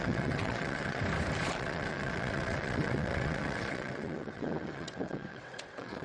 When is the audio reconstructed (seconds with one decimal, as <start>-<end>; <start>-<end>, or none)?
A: 0.0-1.0; 1.5-6.0